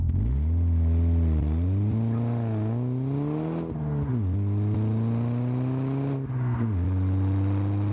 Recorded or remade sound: recorded